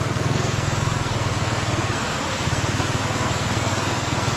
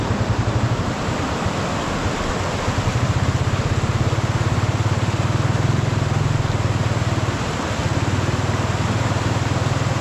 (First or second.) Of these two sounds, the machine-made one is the first